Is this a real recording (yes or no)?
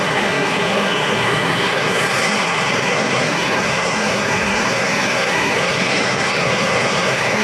no